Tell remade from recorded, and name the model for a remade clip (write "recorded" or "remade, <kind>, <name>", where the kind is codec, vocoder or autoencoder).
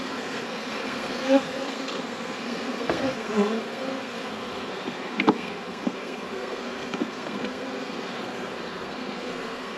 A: remade, codec, SNAC